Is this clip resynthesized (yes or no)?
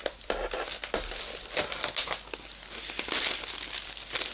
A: no